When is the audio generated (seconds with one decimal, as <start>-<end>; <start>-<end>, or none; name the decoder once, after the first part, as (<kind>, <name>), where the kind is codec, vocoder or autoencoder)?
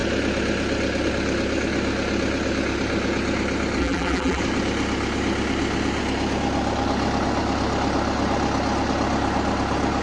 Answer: 3.8-4.4 (vocoder, BigVGAN v2)